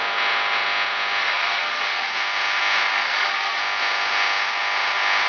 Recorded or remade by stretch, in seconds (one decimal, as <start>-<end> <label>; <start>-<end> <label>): 0.0-1.2 recorded; 1.2-2.1 remade; 2.1-2.9 recorded; 2.9-3.6 remade; 3.6-5.3 recorded